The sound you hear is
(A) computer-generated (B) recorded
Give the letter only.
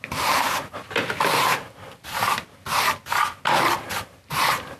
B